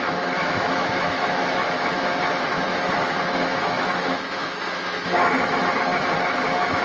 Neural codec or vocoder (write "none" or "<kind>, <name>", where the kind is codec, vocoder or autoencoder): autoencoder, DAC-VAE